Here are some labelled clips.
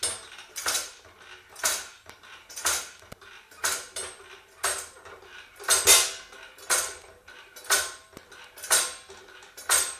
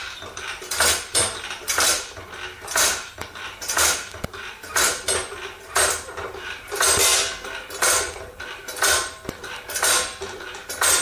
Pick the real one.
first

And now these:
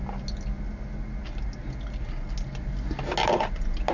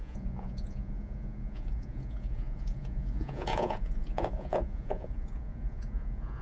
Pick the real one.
first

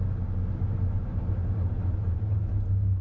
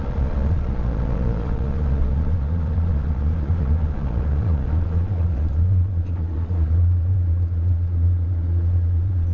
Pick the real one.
first